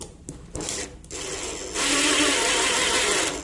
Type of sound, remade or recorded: recorded